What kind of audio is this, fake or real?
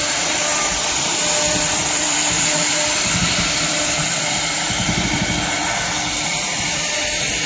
fake